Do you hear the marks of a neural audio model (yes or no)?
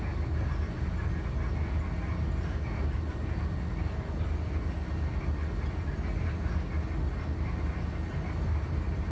no